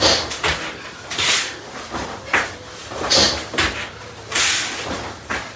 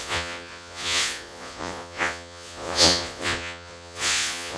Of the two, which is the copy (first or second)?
second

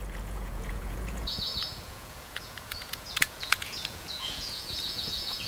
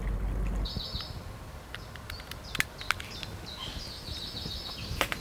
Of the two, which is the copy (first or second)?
first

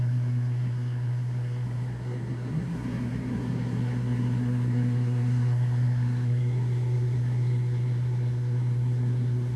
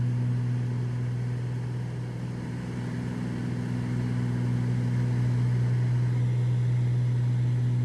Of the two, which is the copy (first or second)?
first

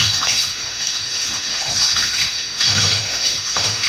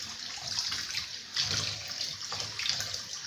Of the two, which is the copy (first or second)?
first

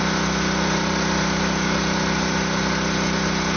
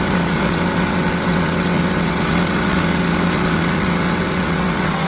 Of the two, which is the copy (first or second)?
second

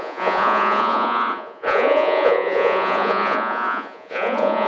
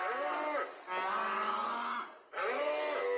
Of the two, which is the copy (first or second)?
first